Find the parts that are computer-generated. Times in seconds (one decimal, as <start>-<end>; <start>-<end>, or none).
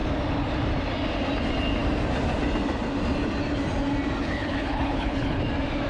4.2-5.4